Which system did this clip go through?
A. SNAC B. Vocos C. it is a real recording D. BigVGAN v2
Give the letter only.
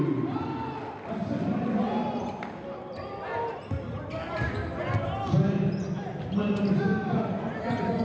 C